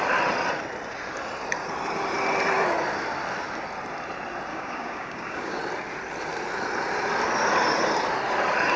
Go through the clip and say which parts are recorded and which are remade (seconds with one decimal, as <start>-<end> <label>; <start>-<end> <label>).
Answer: 0.0-4.5 recorded; 4.5-5.6 remade; 5.6-8.8 recorded